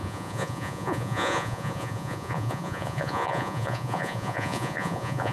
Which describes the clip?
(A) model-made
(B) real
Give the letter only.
A